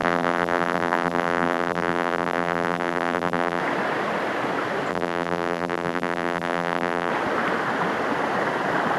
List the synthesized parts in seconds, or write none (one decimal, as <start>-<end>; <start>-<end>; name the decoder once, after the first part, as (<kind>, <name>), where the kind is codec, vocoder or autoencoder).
0.0-3.6 (vocoder, BigVGAN v2); 4.9-7.1